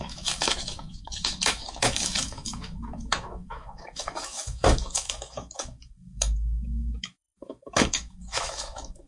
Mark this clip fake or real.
fake